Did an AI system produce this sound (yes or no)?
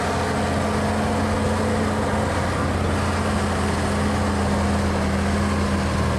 no